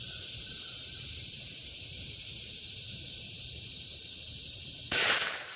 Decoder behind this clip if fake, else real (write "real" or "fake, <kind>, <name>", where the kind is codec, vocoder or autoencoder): fake, vocoder, BigVGAN v2